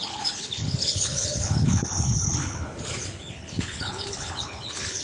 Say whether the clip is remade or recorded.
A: remade